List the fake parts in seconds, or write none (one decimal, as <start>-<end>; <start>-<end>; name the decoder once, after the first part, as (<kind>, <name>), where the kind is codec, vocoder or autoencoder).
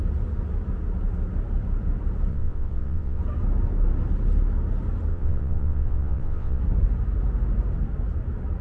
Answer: 2.3-3.2 (vocoder, WaveNeXt); 5.1-6.6